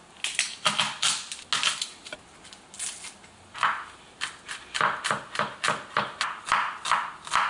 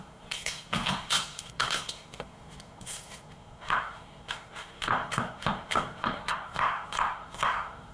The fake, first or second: second